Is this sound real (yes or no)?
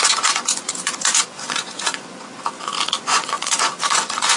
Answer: no